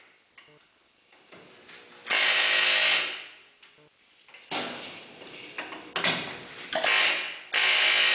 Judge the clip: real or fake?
real